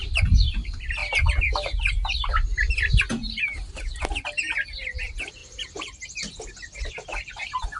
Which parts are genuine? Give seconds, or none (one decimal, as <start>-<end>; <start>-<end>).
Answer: 0.0-7.8